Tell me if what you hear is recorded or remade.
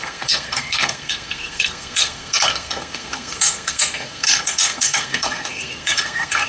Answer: remade